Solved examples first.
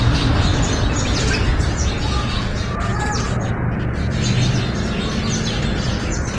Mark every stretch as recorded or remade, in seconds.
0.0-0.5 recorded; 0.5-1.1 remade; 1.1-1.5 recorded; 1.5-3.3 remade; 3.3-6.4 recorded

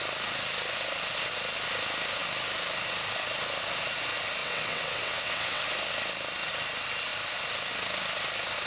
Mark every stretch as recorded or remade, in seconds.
0.0-4.4 recorded; 4.4-5.6 remade; 5.6-8.7 recorded

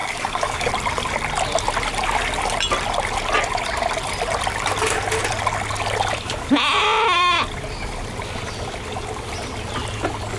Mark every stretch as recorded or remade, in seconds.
0.0-0.7 remade; 0.7-10.4 recorded

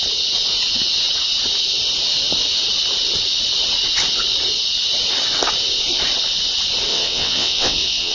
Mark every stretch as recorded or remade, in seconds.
0.0-6.9 recorded; 6.9-8.1 remade